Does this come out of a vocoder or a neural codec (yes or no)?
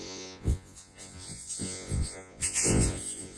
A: yes